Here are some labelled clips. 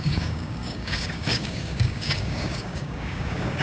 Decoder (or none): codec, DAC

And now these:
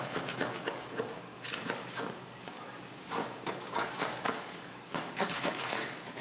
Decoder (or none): codec, DAC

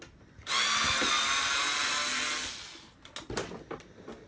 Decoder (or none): none